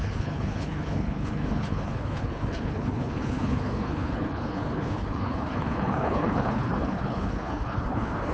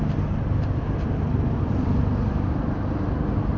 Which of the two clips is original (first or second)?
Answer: second